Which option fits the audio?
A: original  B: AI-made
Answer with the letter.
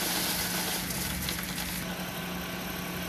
A